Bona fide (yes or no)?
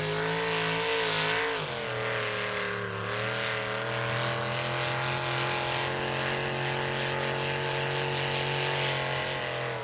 yes